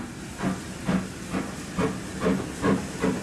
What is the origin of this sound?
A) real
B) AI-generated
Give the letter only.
A